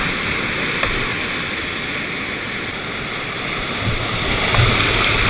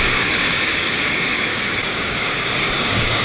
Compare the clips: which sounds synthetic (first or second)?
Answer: second